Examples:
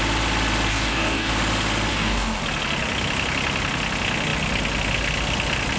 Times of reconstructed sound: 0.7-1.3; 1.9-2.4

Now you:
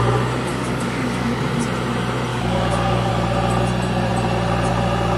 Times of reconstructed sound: 0.5-1.4; 2.3-3.1

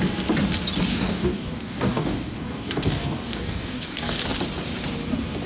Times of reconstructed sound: 0.9-4.2